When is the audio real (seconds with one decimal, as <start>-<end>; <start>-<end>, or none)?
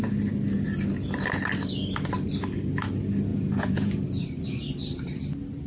0.0-3.3; 3.9-5.7